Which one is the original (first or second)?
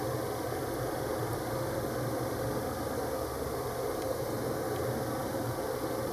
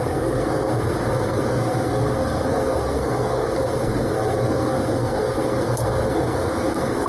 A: first